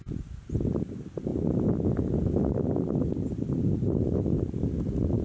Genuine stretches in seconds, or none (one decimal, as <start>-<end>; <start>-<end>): 0.0-5.2